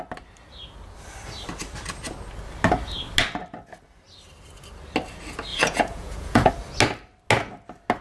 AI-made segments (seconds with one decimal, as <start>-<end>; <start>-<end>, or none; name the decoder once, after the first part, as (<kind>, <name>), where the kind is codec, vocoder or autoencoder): 5.5-6.5 (vocoder, Vocos)